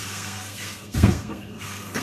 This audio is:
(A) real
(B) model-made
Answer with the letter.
B